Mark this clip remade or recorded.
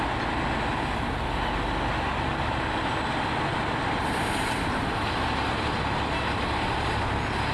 recorded